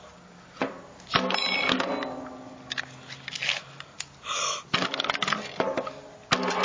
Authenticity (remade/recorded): recorded